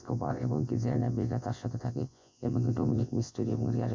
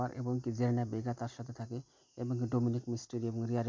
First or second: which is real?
second